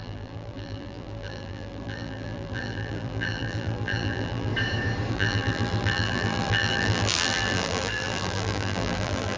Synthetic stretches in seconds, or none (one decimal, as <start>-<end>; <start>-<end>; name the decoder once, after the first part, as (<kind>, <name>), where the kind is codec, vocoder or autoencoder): 0.0-4.5 (vocoder, BigVGAN v2); 5.1-9.4